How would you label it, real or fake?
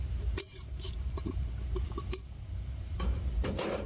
fake